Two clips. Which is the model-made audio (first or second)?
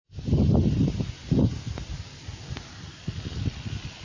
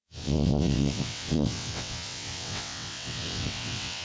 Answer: second